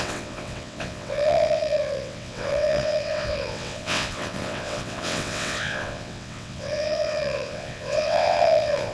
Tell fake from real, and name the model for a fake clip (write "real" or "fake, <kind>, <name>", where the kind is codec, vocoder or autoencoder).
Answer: fake, vocoder, WaveNeXt